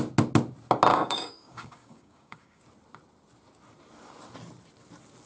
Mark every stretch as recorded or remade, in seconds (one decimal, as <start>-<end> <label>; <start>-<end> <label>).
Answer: 0.0-0.9 recorded; 0.9-2.6 remade; 2.6-5.3 recorded